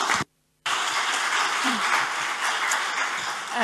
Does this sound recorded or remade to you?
remade